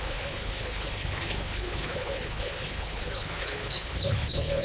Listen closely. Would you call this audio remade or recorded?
remade